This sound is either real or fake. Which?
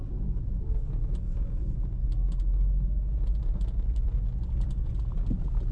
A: real